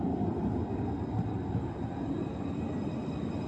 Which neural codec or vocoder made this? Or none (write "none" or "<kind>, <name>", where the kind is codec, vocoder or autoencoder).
vocoder, BigVGAN v2